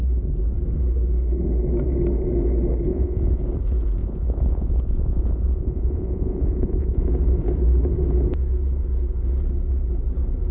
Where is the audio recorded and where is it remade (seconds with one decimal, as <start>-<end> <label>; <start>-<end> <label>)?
0.0-2.9 recorded; 2.9-3.4 remade; 3.4-4.0 recorded; 4.0-7.1 remade; 7.1-10.5 recorded